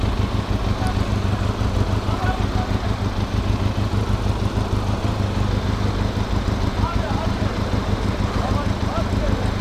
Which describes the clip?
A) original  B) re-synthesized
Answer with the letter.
A